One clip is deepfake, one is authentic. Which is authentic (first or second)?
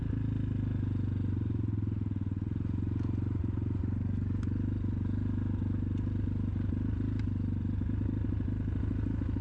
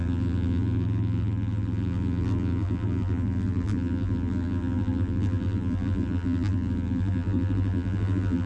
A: first